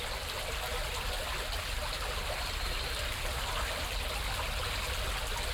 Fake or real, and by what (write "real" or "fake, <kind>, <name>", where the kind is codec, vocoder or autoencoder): real